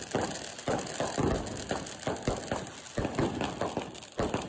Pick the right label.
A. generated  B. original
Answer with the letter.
B